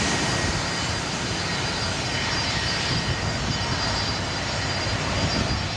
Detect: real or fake real